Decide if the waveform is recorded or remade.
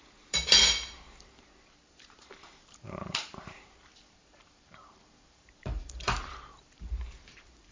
remade